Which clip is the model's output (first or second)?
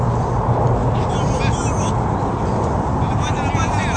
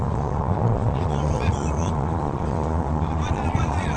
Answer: second